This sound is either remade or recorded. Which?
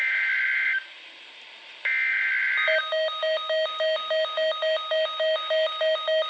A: recorded